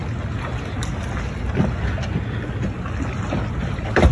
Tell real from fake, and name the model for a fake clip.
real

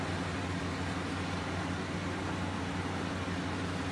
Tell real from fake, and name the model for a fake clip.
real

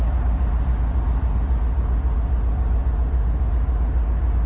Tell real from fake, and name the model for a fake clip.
real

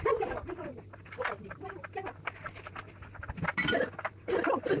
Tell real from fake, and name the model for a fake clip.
real